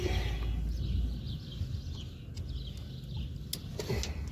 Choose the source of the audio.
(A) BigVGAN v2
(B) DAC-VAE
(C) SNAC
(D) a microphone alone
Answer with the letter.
D